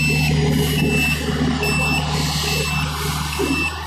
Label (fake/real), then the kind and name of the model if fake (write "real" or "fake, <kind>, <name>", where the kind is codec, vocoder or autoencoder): real